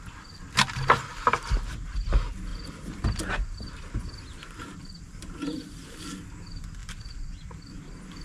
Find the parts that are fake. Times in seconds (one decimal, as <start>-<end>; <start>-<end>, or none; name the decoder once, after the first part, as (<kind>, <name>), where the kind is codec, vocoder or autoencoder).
2.5-6.0 (vocoder, BigVGAN v2)